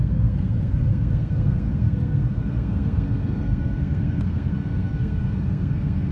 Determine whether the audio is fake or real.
fake